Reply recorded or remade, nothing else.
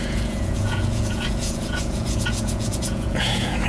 remade